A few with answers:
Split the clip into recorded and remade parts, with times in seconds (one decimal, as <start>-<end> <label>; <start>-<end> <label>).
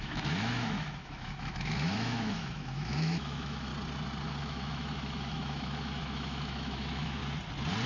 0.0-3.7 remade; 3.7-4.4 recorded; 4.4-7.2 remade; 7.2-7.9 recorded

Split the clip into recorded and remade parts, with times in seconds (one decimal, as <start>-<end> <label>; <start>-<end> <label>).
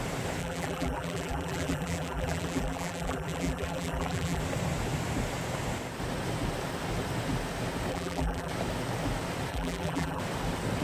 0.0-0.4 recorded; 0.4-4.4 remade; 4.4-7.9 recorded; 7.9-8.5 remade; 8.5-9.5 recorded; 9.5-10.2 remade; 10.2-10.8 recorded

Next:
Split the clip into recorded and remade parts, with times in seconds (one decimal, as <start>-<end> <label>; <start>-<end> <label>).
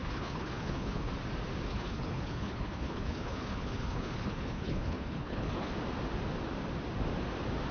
0.0-1.1 remade; 1.1-1.7 recorded; 1.7-5.7 remade; 5.7-7.7 recorded